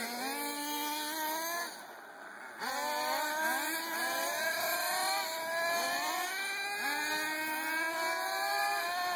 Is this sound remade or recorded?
recorded